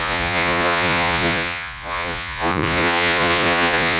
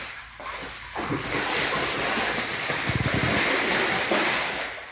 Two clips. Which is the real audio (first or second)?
second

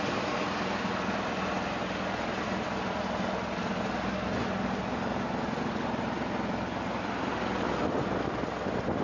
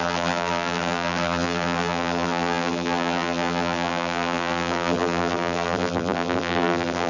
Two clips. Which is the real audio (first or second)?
first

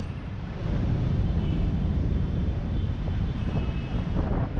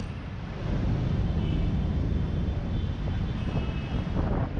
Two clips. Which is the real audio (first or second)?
second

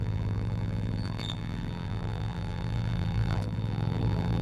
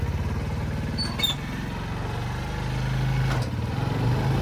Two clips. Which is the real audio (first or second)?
second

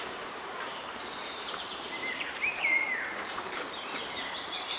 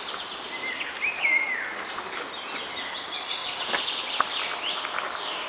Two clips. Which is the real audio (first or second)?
second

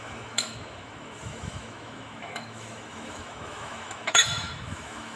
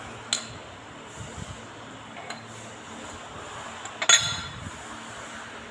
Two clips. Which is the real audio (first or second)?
second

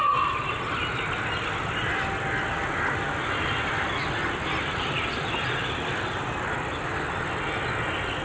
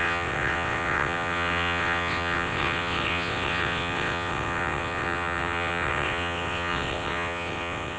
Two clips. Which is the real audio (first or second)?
first